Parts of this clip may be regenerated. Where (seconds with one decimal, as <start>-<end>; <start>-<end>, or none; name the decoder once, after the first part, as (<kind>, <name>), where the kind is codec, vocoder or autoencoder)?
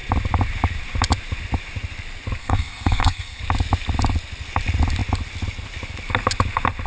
2.4-3.4 (codec, SNAC)